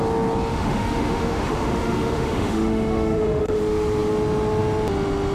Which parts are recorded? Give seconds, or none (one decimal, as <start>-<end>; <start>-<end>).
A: 0.0-0.5; 3.6-5.3